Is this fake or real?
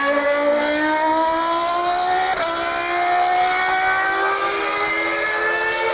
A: real